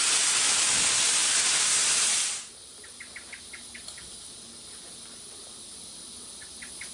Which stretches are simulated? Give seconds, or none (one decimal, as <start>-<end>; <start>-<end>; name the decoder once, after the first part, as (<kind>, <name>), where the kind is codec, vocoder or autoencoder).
1.2-2.4 (vocoder, BigVGAN v2)